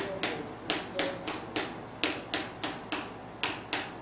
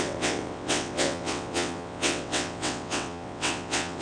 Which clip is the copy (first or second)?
second